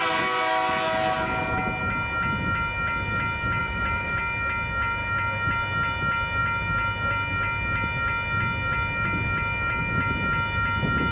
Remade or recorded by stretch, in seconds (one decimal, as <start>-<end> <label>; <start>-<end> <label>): 0.0-3.6 recorded; 3.6-4.2 remade; 4.2-11.1 recorded